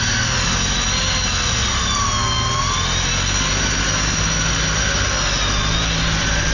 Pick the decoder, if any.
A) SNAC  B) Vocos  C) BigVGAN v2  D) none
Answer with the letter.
D